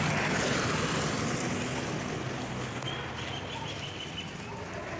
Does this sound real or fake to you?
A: real